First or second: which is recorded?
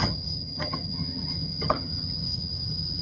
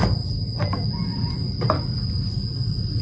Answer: second